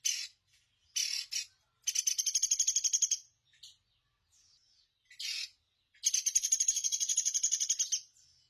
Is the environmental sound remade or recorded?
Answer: recorded